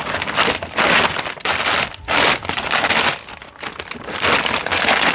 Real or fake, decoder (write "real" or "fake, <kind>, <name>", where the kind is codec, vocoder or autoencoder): real